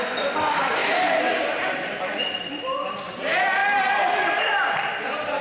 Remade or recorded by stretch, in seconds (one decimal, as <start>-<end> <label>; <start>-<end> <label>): 0.0-5.4 recorded